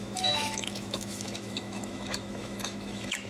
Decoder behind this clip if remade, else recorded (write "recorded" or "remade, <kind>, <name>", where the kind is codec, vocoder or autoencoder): remade, autoencoder, DAC-VAE